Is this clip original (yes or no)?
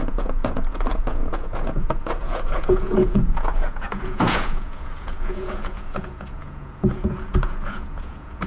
no